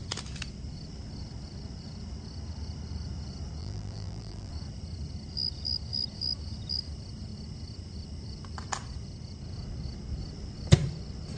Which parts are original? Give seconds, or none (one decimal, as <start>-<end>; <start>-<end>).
0.0-3.6; 4.5-11.4